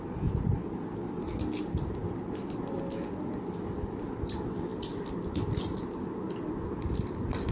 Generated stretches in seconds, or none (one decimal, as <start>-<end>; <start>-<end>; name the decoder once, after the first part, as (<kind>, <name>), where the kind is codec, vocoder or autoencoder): none